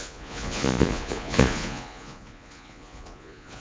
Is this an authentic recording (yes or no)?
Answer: no